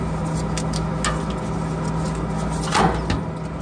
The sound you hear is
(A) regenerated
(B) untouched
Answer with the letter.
B